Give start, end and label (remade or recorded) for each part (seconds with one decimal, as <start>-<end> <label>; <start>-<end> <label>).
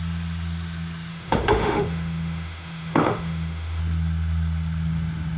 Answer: 0.0-1.1 recorded; 1.1-3.8 remade; 3.8-5.4 recorded